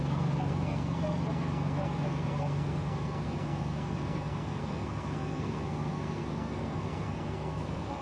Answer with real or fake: fake